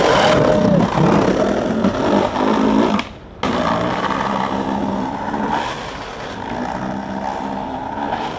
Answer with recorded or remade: recorded